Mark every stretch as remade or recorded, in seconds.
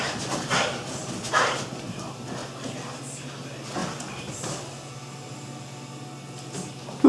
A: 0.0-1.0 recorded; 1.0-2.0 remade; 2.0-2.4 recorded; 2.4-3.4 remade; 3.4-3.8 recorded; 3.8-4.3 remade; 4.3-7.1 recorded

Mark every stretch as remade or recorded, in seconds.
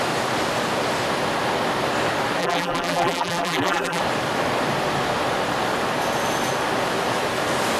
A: 0.0-2.4 recorded; 2.4-4.0 remade; 4.0-7.8 recorded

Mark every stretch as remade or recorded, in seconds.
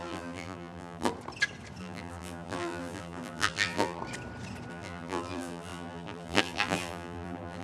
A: 0.0-1.1 remade; 1.1-1.8 recorded; 1.8-4.0 remade; 4.0-4.7 recorded; 4.7-7.6 remade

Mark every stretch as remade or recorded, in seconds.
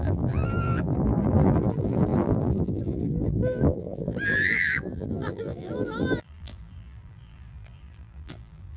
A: 0.0-8.8 remade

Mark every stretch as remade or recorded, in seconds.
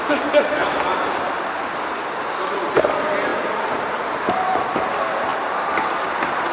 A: 0.0-0.6 remade; 0.6-2.5 recorded; 2.5-5.3 remade; 5.3-6.5 recorded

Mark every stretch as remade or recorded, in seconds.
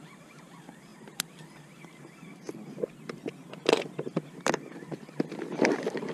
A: 0.0-6.1 recorded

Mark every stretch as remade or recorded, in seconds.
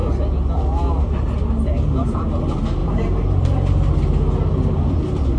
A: 0.0-2.8 recorded; 2.8-3.9 remade; 3.9-5.4 recorded